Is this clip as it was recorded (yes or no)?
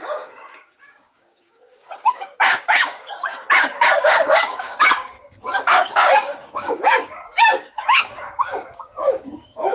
no